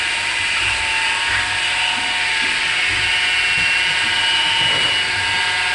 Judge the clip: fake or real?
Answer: real